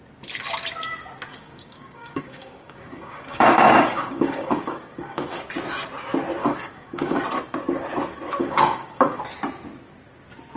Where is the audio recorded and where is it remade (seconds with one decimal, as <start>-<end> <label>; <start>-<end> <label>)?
0.0-1.3 recorded; 1.3-5.4 remade; 5.4-6.4 recorded; 6.4-7.2 remade; 7.2-8.4 recorded; 8.4-9.2 remade; 9.2-10.6 recorded